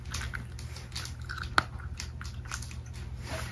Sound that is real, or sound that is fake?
real